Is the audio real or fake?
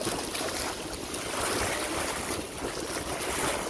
real